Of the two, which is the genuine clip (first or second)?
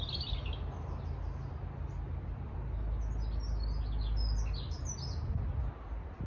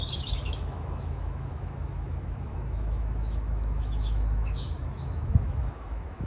first